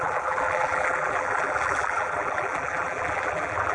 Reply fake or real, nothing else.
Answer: fake